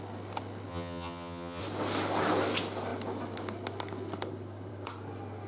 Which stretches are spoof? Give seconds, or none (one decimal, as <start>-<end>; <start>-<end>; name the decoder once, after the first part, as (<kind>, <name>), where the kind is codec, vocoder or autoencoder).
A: 0.7-1.6 (vocoder, HiFi-GAN)